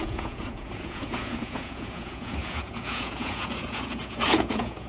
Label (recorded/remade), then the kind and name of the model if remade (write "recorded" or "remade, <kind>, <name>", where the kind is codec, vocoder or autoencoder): remade, vocoder, Vocos